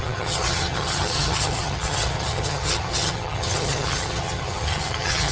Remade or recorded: remade